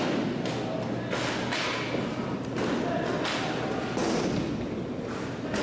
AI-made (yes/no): no